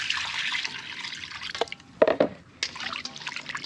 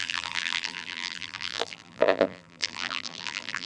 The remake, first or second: second